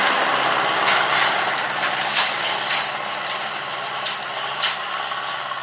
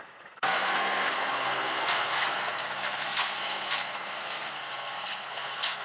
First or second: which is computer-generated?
second